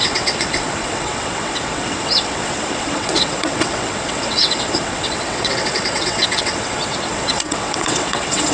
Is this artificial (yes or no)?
yes